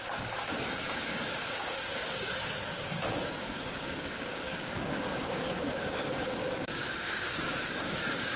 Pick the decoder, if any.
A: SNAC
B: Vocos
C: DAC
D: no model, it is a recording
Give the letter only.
C